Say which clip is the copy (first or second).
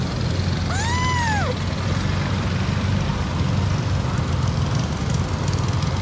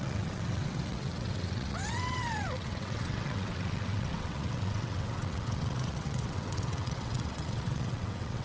second